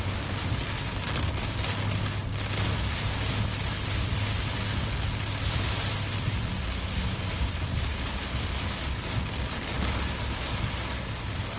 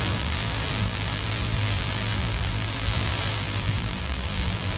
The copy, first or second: second